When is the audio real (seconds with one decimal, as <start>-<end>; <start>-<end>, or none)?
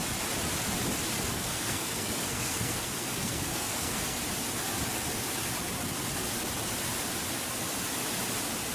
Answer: 0.0-1.3; 4.2-8.7